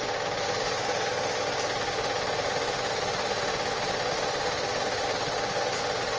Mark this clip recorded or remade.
recorded